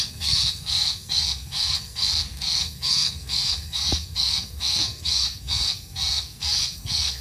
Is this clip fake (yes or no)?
yes